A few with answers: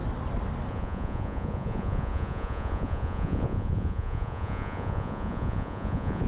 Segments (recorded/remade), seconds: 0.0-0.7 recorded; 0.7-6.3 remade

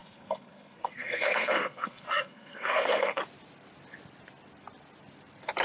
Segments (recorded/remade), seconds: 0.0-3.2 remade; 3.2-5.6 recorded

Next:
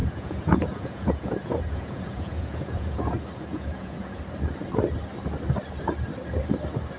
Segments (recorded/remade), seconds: 0.0-3.1 remade; 3.1-3.5 recorded; 3.5-4.2 remade; 4.2-7.0 recorded